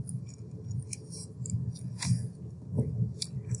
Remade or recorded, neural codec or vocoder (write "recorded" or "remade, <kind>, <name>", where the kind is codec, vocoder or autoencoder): recorded